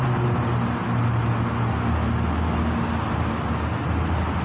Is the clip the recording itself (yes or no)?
yes